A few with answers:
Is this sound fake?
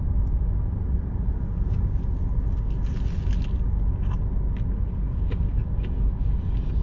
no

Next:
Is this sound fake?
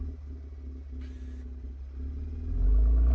no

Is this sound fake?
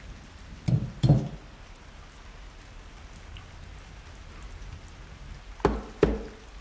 no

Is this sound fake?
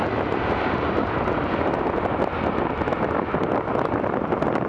no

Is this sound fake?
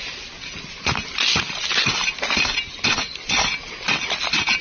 no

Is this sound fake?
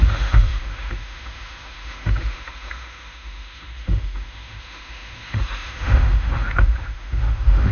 yes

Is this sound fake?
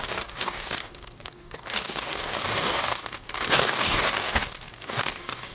yes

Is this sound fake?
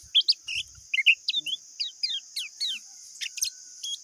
no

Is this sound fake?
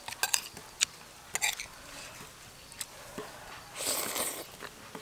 no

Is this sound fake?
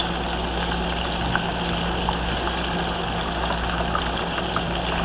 no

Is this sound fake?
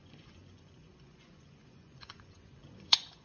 yes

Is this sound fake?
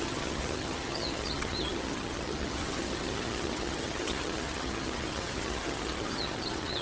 yes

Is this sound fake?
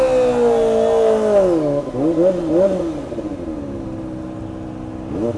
no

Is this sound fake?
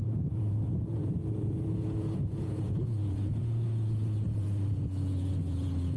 yes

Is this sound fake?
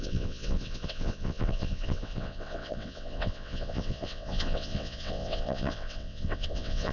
yes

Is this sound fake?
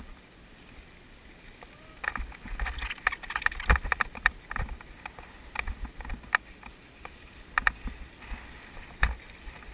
no